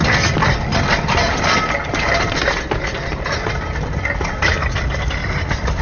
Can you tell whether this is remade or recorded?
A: recorded